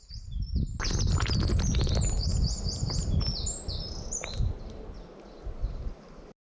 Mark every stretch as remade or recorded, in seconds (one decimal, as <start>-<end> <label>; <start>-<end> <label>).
0.0-6.4 recorded